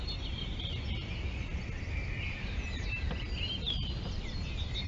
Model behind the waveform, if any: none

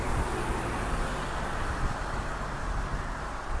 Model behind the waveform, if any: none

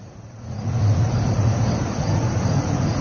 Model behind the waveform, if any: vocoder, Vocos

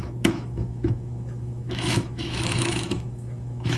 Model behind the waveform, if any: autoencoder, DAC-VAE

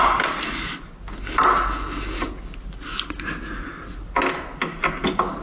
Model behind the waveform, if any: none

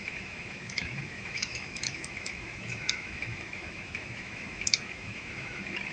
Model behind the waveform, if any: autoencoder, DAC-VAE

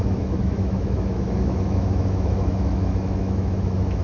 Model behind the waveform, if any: autoencoder, DAC-VAE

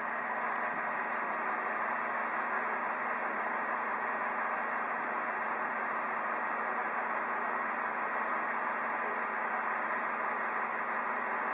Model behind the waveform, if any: none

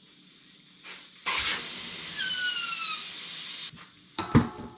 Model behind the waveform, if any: none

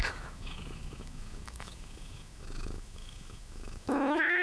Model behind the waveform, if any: autoencoder, DAC-VAE